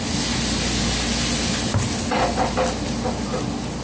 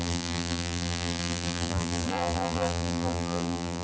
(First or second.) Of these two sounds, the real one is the first